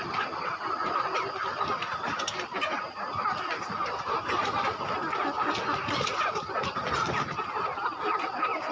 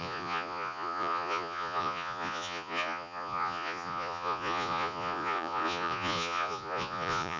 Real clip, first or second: first